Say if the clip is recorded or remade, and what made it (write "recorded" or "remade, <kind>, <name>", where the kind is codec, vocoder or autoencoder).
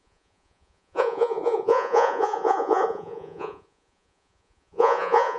remade, vocoder, Vocos